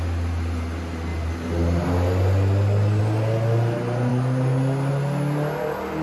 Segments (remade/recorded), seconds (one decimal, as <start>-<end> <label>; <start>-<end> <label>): 0.0-6.0 recorded